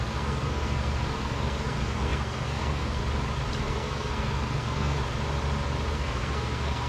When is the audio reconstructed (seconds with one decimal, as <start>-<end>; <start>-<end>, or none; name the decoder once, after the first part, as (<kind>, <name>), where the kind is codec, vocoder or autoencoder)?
0.0-3.0 (codec, SNAC); 3.6-5.0; 5.9-6.9